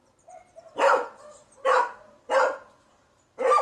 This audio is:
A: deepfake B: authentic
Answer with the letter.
A